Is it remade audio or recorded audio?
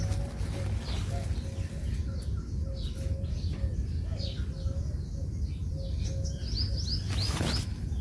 recorded